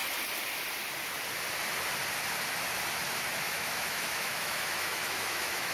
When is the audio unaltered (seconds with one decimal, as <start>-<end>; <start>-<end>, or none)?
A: 0.0-3.4